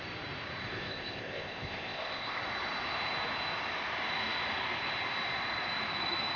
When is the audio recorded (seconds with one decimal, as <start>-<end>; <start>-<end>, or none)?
0.0-0.6; 2.4-6.4